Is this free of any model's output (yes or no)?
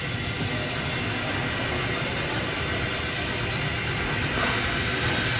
yes